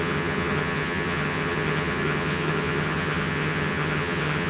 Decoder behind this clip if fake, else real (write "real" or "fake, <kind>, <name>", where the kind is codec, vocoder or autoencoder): fake, vocoder, HiFi-GAN